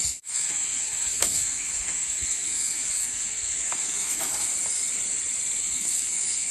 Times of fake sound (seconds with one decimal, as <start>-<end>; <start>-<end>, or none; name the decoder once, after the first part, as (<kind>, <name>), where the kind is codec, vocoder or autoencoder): 0.0-4.5 (codec, SNAC); 5.6-6.5